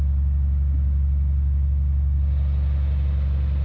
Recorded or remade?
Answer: recorded